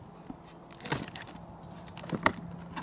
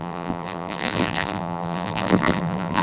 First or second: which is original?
first